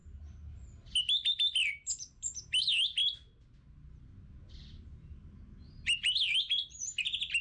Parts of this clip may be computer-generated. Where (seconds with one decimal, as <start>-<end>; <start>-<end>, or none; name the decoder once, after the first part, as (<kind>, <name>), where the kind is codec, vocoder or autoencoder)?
none

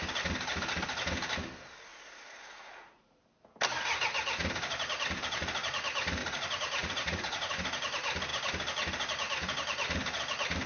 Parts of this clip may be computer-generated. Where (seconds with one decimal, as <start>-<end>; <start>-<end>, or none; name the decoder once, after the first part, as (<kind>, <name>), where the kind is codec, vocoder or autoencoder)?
1.9-3.2 (vocoder, Vocos); 6.2-7.5

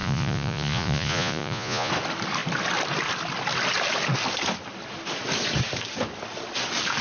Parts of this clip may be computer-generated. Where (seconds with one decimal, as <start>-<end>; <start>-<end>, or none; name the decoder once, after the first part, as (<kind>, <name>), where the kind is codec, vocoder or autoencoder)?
0.0-1.9 (vocoder, Vocos)

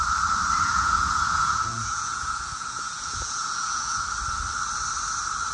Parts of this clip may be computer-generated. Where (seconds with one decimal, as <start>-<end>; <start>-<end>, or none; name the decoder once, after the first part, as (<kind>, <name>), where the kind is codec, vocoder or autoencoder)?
0.7-4.0 (vocoder, Vocos)